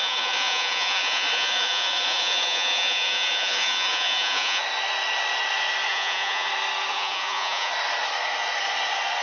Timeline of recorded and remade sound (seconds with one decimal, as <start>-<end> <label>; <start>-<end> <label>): 0.0-4.6 remade; 4.6-5.9 recorded; 5.9-6.5 remade; 6.5-6.9 recorded; 6.9-7.7 remade; 7.7-9.2 recorded